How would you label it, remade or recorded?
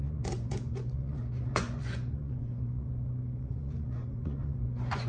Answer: remade